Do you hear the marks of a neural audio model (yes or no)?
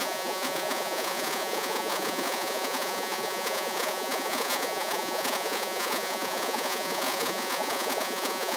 yes